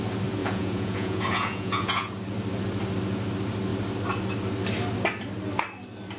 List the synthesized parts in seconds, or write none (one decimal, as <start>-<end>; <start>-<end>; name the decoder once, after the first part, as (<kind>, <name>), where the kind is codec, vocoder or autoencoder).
0.4-2.1 (vocoder, Vocos)